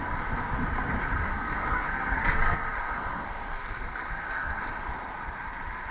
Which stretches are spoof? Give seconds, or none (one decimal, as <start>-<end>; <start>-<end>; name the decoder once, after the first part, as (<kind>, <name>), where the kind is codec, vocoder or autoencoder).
1.1-4.6 (codec, SNAC)